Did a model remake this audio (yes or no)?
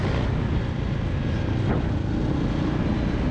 no